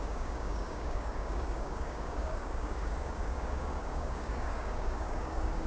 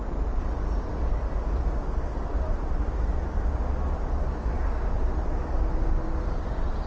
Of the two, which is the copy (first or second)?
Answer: first